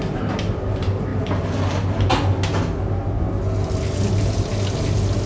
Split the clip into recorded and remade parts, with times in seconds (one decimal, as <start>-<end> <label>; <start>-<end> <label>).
0.0-5.3 recorded